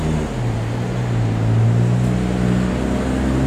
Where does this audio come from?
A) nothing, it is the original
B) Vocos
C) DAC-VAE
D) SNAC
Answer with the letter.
A